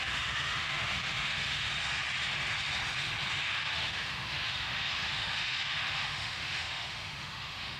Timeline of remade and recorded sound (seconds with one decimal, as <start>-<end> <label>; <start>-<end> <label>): 0.0-1.7 remade; 1.7-3.4 recorded; 3.4-7.8 remade